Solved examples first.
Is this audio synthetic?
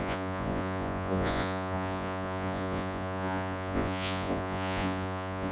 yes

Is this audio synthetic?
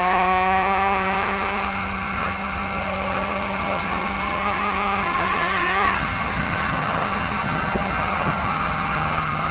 yes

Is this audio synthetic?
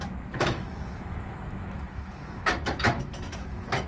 yes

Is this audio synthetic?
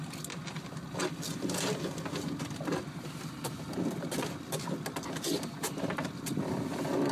no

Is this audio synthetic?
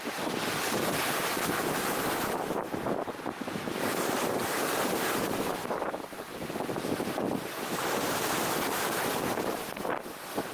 no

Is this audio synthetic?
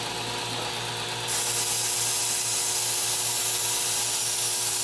no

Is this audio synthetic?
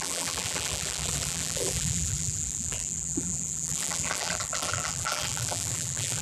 yes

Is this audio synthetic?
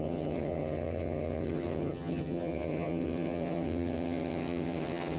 yes